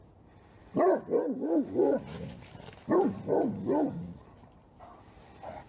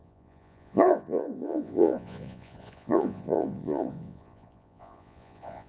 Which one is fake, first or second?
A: second